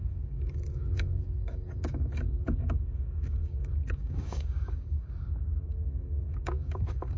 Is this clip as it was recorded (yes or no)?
no